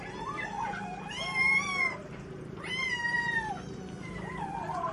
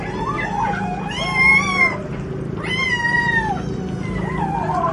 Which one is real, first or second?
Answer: second